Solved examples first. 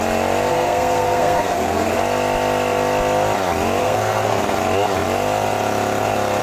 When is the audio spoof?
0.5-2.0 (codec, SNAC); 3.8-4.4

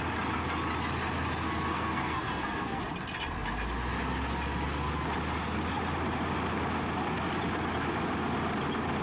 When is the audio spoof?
1.7-2.8 (codec, SNAC)